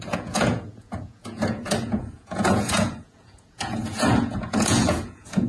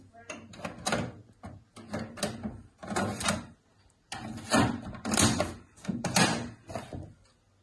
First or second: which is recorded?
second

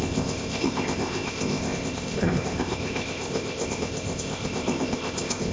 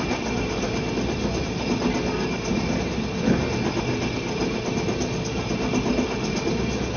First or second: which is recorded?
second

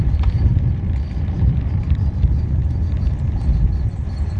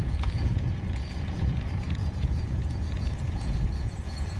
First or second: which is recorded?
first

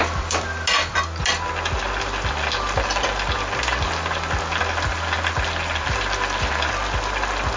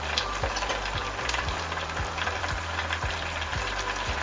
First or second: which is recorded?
first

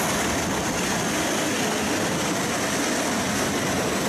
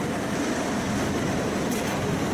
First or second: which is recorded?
first